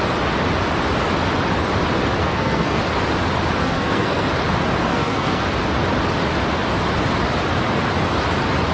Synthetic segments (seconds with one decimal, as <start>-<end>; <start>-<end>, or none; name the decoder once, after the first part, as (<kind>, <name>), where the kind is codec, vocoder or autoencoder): 2.2-2.8 (codec, SNAC); 3.6-4.3; 4.9-5.4